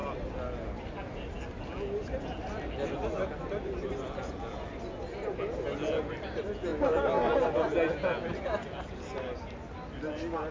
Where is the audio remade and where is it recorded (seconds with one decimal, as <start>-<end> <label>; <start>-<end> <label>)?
0.0-10.5 recorded